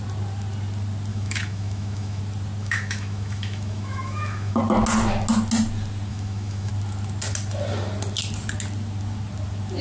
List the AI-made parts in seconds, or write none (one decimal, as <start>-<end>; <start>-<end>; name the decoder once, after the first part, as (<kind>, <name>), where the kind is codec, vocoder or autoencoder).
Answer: 1.1-2.2 (autoencoder, DAC-VAE); 2.6-4.6; 6.1-6.7